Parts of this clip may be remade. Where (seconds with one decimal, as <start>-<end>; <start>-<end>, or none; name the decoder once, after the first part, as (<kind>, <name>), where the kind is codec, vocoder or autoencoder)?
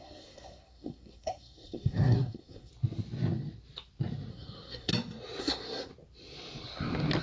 0.0-2.7 (codec, SNAC); 4.3-4.9; 5.4-5.9